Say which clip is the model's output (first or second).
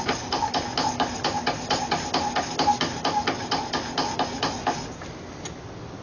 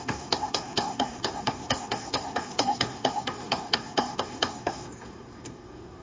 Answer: second